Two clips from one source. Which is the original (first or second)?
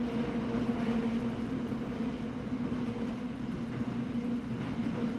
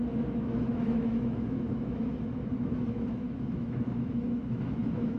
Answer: first